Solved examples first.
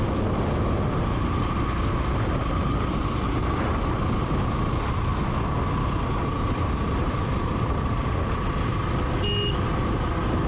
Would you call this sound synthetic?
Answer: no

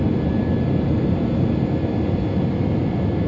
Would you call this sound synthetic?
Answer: no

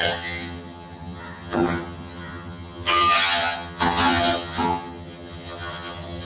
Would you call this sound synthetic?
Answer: yes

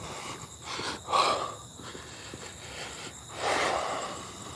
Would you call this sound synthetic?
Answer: no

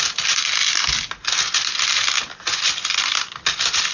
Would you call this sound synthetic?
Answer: no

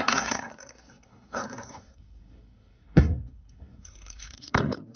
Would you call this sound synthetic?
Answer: yes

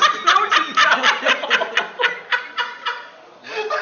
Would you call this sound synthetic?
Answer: no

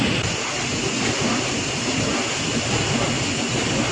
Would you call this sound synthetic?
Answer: no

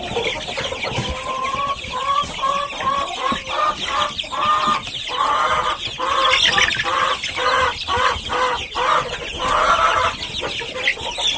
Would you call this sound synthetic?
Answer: no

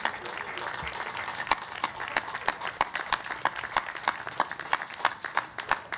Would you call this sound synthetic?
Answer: no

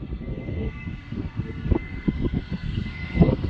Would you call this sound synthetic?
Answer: yes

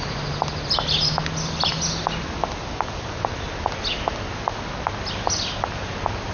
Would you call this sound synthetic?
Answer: no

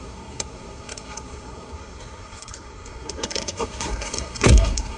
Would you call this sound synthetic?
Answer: yes